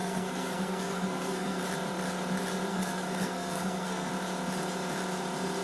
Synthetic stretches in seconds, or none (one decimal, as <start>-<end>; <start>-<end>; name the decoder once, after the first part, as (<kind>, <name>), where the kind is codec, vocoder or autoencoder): 0.0-1.6 (codec, SNAC); 2.7-4.1